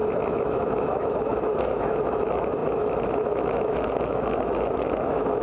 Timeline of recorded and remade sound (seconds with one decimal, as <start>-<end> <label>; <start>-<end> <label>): 0.0-5.4 remade